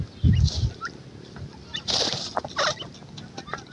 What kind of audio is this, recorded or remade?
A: recorded